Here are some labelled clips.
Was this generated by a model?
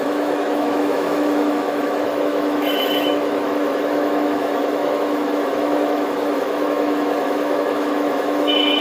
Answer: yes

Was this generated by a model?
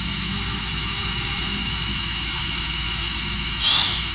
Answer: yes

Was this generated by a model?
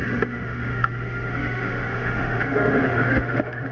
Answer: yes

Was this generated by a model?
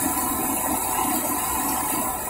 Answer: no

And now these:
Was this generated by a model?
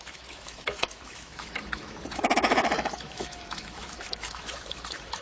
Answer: yes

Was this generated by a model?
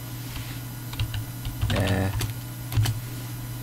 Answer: no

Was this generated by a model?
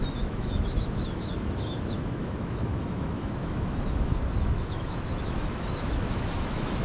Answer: yes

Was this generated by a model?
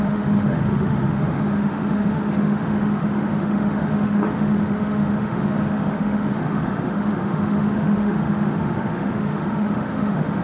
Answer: yes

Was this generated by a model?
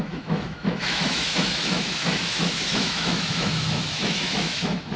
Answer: yes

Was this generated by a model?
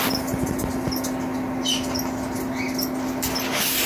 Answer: no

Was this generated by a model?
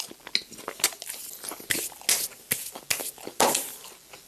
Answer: no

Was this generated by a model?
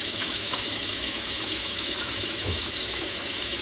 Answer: yes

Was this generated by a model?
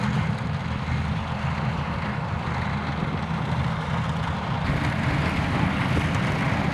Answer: no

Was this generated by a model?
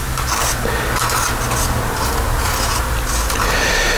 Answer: no